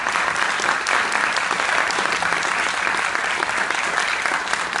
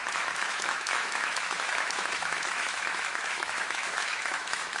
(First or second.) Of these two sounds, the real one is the first